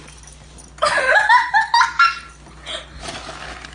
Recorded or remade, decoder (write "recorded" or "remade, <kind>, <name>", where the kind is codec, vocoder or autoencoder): recorded